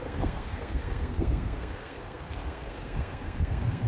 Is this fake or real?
fake